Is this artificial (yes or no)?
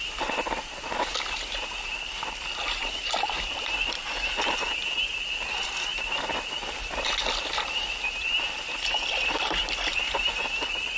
yes